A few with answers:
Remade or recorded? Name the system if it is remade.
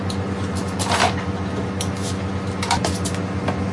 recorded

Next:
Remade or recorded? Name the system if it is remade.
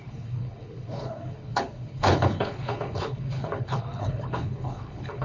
remade, codec, HILCodec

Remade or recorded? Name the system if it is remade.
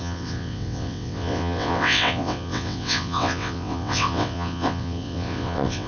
remade, vocoder, WaveNeXt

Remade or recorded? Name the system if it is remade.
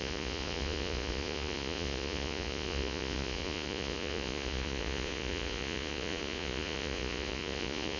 remade, vocoder, Vocos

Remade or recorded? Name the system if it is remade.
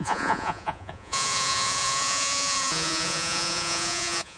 remade, vocoder, Vocos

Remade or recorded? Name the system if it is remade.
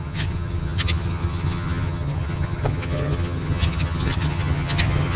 remade, vocoder, HiFi-GAN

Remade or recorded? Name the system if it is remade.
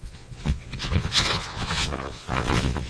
remade, vocoder, Vocos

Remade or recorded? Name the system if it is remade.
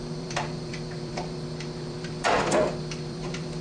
remade, vocoder, BigVGAN v2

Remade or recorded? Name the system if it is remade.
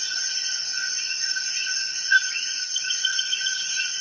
remade, vocoder, Vocos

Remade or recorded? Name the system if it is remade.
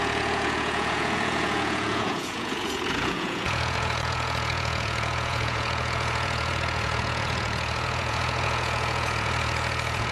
remade, vocoder, Vocos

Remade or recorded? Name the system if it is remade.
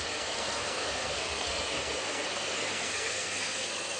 remade, codec, SNAC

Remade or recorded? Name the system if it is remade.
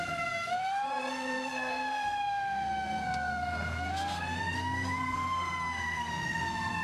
remade, codec, SNAC